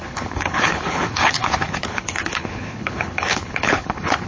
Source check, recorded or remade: remade